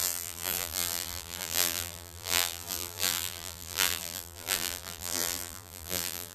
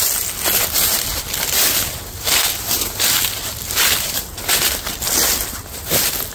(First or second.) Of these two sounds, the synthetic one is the first